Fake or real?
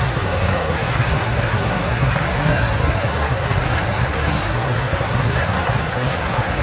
fake